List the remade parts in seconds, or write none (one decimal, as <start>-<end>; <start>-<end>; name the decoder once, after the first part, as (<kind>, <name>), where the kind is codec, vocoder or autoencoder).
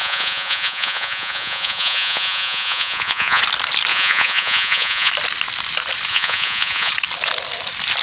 0.0-3.4 (vocoder, Vocos); 3.9-5.1; 6.1-6.9